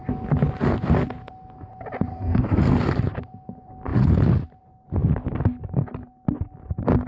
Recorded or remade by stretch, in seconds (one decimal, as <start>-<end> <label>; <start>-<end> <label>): 0.0-2.1 recorded; 2.1-2.9 remade; 2.9-7.1 recorded